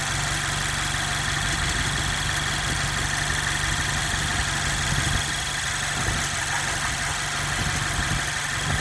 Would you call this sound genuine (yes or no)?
yes